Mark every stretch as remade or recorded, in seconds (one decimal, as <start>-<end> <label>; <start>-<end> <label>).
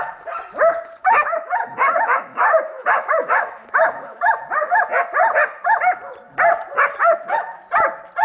0.0-1.0 recorded; 1.0-4.2 remade; 4.2-7.0 recorded; 7.0-7.6 remade; 7.6-8.2 recorded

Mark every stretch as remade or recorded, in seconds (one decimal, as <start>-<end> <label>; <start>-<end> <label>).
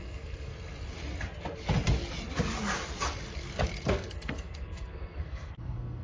0.0-0.5 remade; 0.5-3.8 recorded; 3.8-6.0 remade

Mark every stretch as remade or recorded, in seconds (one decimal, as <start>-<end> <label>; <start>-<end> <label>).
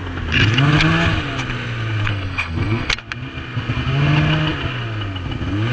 0.0-2.1 recorded; 2.1-2.9 remade; 2.9-5.7 recorded